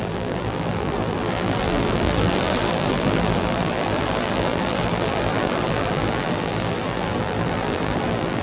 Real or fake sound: fake